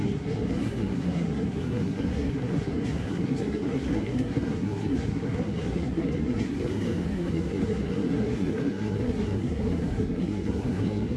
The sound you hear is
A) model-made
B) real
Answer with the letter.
A